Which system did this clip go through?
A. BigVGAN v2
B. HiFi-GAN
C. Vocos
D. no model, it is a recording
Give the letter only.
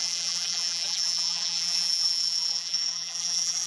A